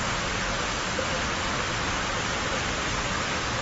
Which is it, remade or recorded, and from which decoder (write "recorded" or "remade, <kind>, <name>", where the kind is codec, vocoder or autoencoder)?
recorded